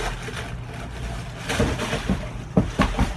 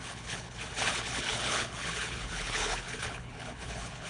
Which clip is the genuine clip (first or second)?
first